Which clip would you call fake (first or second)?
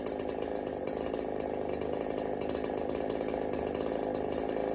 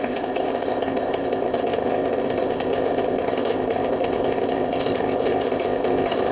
second